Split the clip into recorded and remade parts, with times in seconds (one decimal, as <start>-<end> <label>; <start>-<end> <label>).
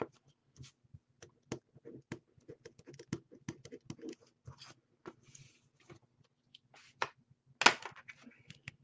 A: 0.0-8.8 recorded